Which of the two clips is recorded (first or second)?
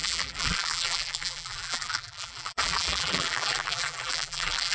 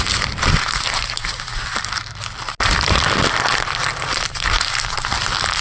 second